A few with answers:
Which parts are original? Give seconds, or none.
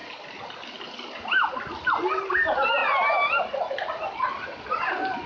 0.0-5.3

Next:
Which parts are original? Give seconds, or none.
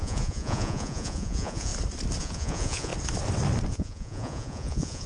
1.7-2.2; 2.9-3.7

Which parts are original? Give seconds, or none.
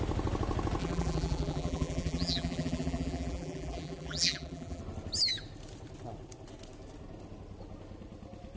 0.0-0.8; 4.8-8.6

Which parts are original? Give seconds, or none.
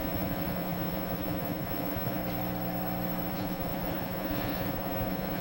2.2-3.3